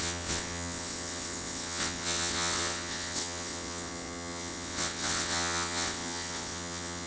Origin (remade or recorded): remade